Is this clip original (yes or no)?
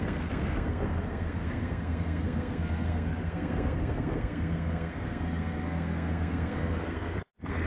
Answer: no